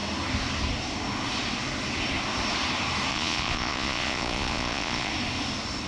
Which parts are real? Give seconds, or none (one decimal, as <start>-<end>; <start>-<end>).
0.0-3.1; 5.1-5.9